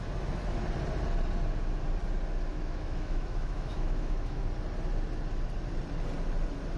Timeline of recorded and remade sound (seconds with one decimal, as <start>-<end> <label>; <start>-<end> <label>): 0.0-2.5 recorded; 2.5-4.4 remade; 4.4-6.8 recorded